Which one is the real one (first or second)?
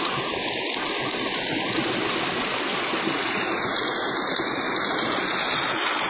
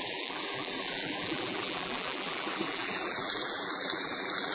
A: first